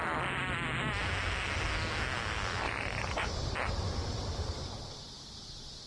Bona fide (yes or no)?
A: yes